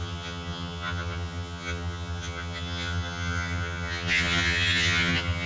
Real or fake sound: fake